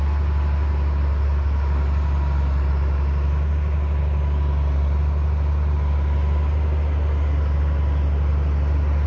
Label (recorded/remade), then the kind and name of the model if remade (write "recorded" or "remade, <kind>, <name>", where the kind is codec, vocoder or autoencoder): recorded